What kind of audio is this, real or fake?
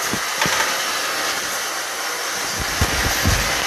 real